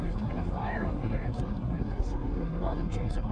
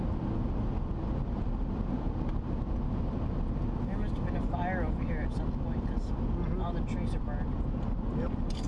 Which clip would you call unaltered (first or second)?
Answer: second